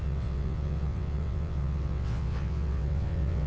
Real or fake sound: fake